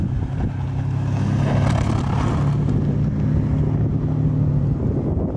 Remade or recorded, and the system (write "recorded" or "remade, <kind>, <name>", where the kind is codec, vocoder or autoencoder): recorded